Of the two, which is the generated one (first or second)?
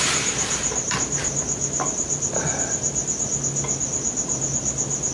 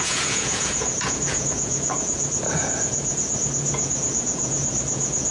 second